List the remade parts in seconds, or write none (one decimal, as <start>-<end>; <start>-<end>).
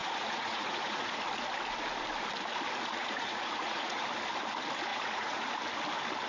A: 0.0-1.2; 3.0-4.0; 4.9-5.5